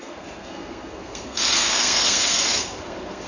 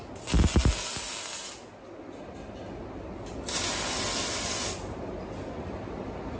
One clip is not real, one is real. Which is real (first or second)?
second